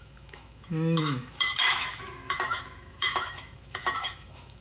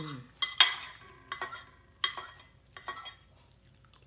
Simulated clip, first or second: first